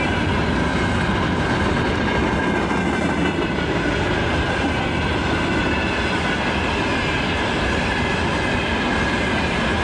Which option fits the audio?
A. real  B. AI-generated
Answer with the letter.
A